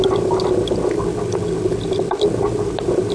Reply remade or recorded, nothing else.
recorded